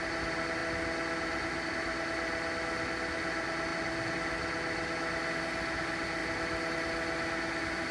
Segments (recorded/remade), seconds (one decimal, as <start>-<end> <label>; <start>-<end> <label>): 0.0-7.9 recorded